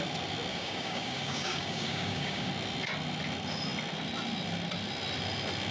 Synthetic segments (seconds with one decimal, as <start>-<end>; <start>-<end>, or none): 0.5-2.5